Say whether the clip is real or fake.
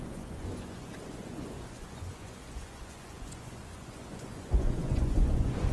fake